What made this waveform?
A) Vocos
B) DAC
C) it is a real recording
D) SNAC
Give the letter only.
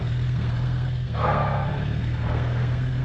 D